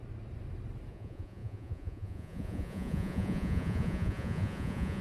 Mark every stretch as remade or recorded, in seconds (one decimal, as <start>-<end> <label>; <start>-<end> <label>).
0.0-0.9 recorded; 0.9-5.0 remade